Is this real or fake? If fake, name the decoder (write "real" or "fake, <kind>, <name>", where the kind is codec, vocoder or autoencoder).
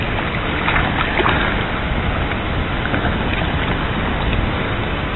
real